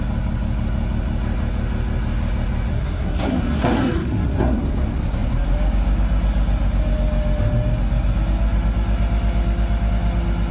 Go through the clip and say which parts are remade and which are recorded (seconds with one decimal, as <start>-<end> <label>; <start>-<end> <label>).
0.0-2.7 recorded; 2.7-4.6 remade; 4.6-10.5 recorded